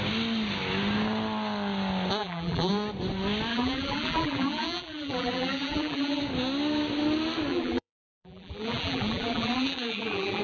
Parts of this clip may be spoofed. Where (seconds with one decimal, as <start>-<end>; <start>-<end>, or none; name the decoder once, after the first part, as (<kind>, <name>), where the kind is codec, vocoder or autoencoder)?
2.2-2.7 (vocoder, BigVGAN v2); 3.5-6.2; 7.5-10.4